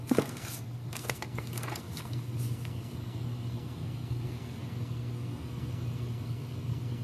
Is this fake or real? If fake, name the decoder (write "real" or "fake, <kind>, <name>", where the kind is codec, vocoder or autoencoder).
fake, codec, SNAC